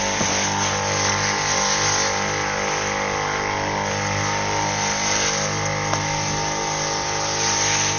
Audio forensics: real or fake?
real